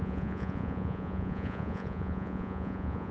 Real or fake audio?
fake